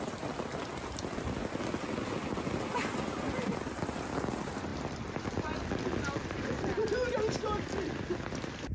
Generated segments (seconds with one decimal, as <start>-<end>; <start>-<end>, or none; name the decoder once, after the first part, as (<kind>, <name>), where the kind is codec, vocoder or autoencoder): 2.8-3.7 (vocoder, BigVGAN v2); 4.7-5.7